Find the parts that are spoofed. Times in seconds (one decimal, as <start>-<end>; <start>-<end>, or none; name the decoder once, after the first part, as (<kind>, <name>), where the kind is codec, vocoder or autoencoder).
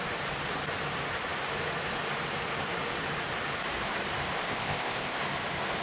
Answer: 4.5-5.2 (codec, ZipCodec)